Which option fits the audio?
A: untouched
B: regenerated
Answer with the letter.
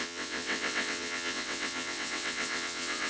B